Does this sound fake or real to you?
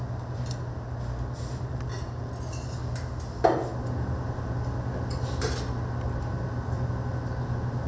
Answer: real